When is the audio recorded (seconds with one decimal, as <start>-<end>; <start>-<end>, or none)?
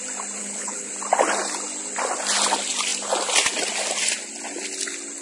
0.0-0.4; 0.9-5.2